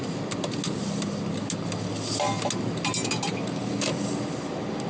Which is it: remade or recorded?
recorded